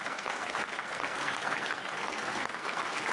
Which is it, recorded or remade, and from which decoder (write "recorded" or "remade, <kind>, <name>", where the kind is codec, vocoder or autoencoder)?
remade, codec, SNAC